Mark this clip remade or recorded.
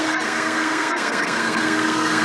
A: remade